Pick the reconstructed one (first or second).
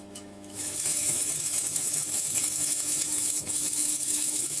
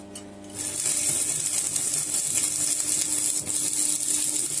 first